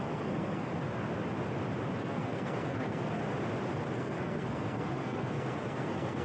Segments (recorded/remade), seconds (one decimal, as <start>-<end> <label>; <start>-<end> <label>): 0.0-0.7 remade; 0.7-2.0 recorded; 2.0-3.2 remade; 3.2-3.9 recorded; 3.9-6.2 remade